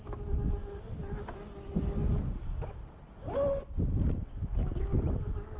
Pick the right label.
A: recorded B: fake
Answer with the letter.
A